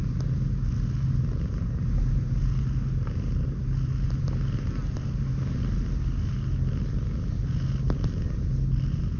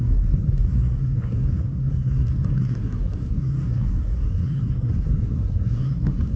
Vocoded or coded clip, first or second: second